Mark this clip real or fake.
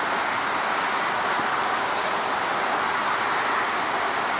real